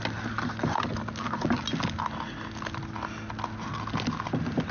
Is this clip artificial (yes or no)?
no